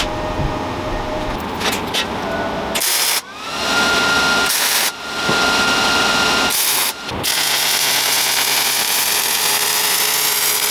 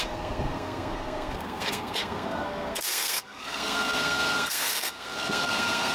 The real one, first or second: first